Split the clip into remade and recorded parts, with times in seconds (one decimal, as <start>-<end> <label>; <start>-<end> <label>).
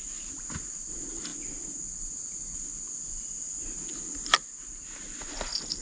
0.0-5.8 recorded